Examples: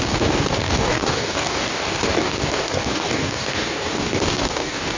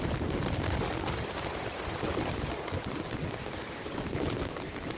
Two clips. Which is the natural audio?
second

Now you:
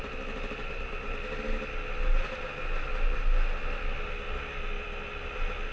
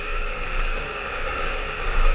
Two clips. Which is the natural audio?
first